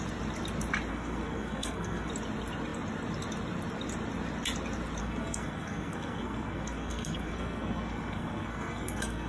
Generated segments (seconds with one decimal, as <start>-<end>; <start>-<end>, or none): 0.9-2.1; 5.0-9.3